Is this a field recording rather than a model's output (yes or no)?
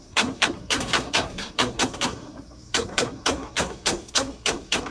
no